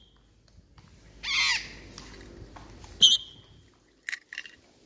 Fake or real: real